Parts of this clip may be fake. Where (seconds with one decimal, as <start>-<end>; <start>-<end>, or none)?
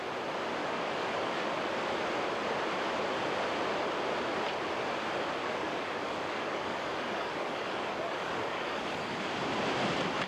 0.6-1.5; 5.4-9.3